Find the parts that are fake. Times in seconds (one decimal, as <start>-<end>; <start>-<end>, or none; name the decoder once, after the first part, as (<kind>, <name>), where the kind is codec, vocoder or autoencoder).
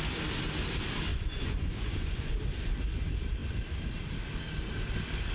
1.1-2.3 (vocoder, Vocos)